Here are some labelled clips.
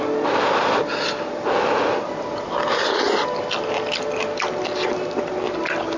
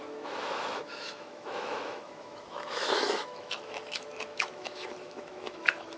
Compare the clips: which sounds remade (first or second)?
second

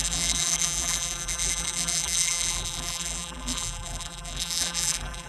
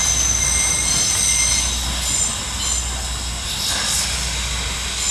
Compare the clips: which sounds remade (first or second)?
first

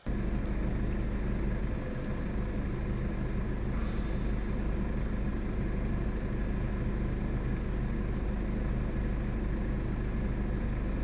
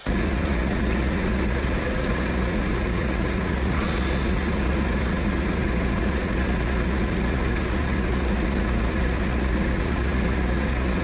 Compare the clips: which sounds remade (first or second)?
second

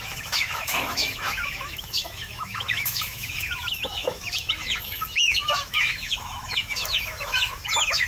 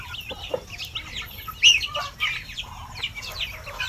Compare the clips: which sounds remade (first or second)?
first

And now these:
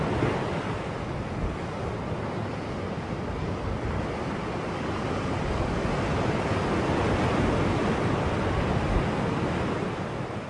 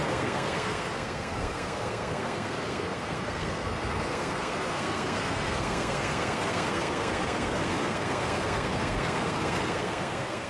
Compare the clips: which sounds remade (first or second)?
second